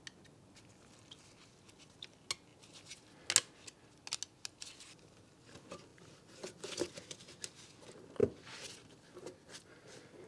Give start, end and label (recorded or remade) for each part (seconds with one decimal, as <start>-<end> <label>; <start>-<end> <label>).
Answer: 0.0-5.9 recorded; 5.9-6.9 remade; 6.9-8.2 recorded; 8.2-10.3 remade